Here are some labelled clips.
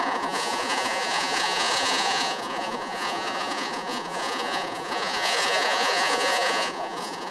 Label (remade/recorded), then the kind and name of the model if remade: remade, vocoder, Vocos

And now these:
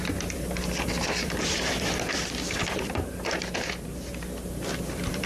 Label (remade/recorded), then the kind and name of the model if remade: remade, vocoder, BigVGAN v2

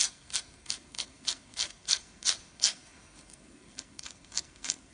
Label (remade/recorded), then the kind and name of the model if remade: remade, codec, SNAC